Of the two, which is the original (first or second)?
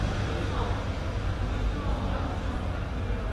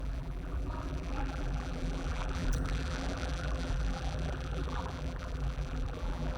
first